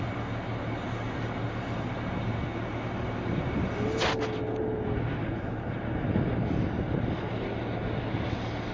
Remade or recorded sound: recorded